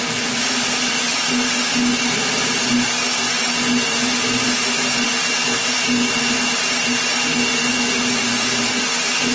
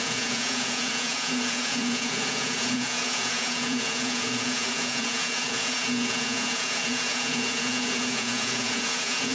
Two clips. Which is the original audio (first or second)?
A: first